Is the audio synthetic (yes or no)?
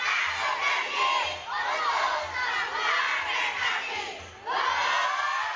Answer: no